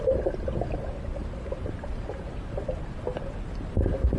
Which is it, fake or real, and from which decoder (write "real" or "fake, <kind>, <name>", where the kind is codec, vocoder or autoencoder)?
real